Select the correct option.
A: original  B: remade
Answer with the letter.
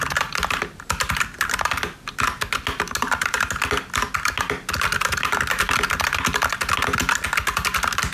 A